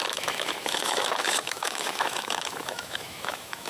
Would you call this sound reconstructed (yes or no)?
yes